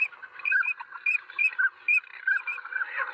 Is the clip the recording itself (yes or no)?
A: yes